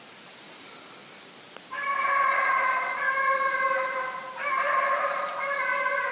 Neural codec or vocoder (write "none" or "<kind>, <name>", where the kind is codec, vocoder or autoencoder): none